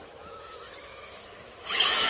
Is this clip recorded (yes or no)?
no